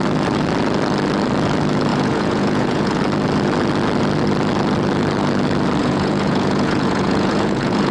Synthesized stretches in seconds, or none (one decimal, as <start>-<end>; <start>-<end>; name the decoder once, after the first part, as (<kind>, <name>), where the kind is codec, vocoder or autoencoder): 1.9-3.0 (vocoder, Vocos); 5.8-7.9